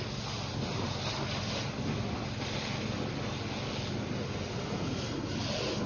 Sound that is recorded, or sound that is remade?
recorded